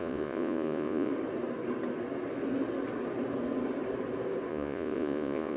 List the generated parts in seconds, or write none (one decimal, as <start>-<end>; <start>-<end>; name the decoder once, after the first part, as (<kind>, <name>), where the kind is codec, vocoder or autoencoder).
0.0-1.1 (vocoder, Vocos); 4.5-5.6